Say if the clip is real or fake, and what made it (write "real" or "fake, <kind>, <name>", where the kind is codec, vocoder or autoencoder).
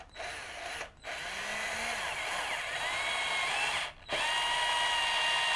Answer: real